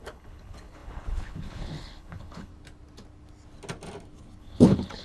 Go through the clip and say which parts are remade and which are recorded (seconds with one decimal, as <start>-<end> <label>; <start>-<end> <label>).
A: 0.0-2.5 remade; 2.5-4.4 recorded; 4.4-5.0 remade